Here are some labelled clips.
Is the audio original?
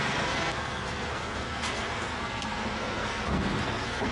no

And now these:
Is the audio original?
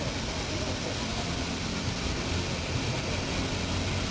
yes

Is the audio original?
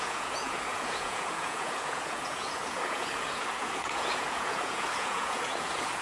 no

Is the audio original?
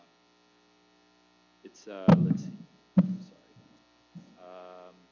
yes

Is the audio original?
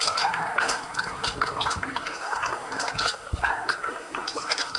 no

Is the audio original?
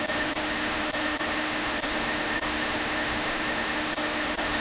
no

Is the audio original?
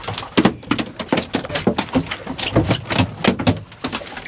yes